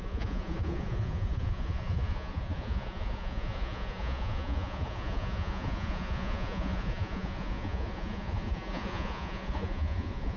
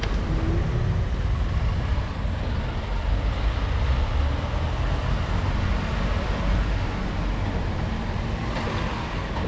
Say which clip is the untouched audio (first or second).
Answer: second